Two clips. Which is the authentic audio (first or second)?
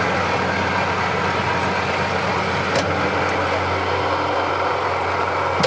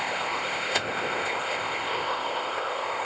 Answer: first